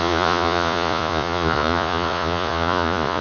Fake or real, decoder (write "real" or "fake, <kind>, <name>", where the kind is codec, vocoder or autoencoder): fake, vocoder, Vocos